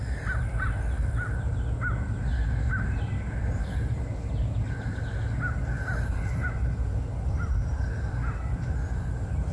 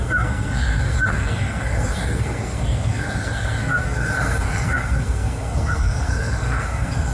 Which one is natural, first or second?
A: first